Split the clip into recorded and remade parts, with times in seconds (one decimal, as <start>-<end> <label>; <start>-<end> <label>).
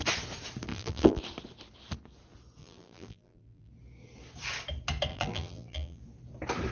0.0-0.7 recorded; 0.7-1.2 remade; 1.2-2.6 recorded; 2.6-3.7 remade; 3.7-5.1 recorded; 5.1-6.0 remade; 6.0-6.7 recorded